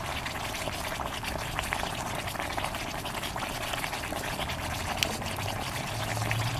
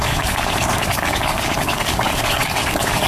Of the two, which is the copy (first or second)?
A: second